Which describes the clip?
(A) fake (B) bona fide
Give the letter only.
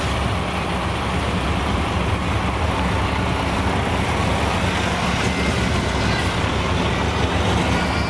B